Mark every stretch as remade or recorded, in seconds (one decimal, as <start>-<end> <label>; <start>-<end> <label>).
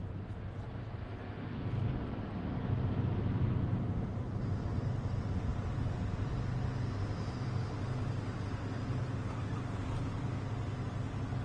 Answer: 0.0-3.7 recorded; 3.7-4.7 remade; 4.7-5.5 recorded; 5.5-6.4 remade; 6.4-11.4 recorded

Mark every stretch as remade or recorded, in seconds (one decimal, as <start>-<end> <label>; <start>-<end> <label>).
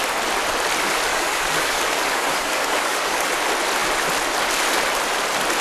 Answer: 0.0-1.1 recorded; 1.1-3.3 remade; 3.3-5.6 recorded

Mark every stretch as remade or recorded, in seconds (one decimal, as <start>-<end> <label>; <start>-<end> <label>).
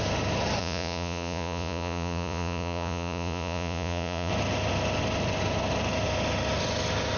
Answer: 0.0-0.6 recorded; 0.6-4.3 remade; 4.3-7.2 recorded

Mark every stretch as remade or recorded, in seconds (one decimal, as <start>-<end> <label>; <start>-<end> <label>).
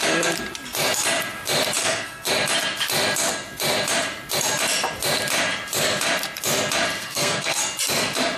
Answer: 0.0-1.8 recorded; 1.8-2.3 remade; 2.3-7.0 recorded; 7.0-7.6 remade; 7.6-8.4 recorded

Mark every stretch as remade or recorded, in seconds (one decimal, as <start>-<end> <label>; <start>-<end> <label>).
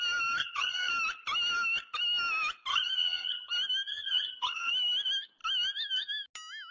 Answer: 0.0-0.4 recorded; 0.4-0.9 remade; 0.9-2.7 recorded; 2.7-3.5 remade; 3.5-3.9 recorded; 3.9-4.7 remade; 4.7-6.7 recorded